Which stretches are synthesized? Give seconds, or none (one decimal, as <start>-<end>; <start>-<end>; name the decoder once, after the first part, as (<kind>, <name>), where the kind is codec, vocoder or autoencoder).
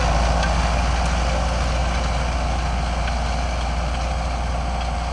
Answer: none